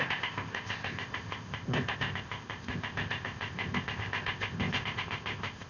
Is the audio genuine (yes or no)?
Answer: no